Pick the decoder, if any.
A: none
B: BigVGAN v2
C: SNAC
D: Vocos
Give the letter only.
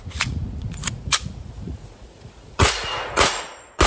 D